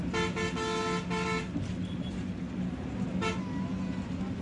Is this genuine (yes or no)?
yes